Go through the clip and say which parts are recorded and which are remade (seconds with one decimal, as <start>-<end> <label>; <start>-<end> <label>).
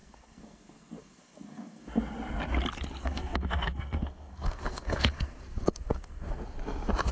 0.0-2.0 remade; 2.0-3.0 recorded; 3.0-6.4 remade; 6.4-7.1 recorded